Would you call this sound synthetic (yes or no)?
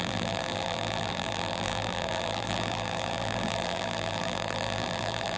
yes